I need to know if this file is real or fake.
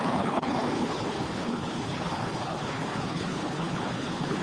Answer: fake